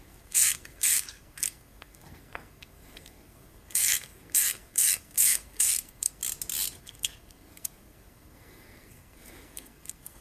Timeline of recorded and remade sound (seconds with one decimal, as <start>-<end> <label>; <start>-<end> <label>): 0.0-6.2 remade; 6.2-6.8 recorded; 6.8-10.2 remade